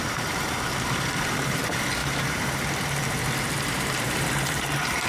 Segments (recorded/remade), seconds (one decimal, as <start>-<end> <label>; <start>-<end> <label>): 0.0-5.1 remade